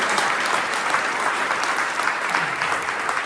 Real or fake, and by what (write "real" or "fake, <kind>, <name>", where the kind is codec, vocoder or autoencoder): fake, vocoder, BigVGAN v2